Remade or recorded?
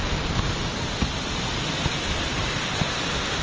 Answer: recorded